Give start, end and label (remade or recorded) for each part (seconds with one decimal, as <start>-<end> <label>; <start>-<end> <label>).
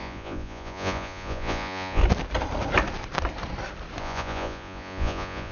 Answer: 0.0-2.0 remade; 2.0-4.0 recorded; 4.0-5.5 remade